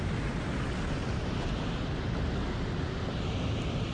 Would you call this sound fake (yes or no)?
no